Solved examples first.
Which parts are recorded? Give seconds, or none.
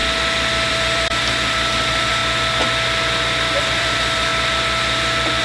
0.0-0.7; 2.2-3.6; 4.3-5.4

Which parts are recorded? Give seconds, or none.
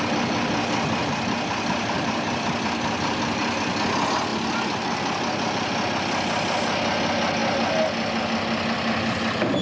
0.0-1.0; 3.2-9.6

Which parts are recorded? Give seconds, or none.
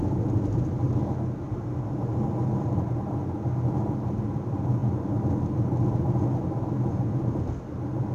0.0-8.1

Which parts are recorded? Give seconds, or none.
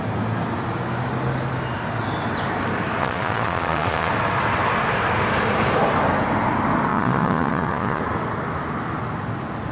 0.0-3.0; 4.1-6.9; 8.0-9.7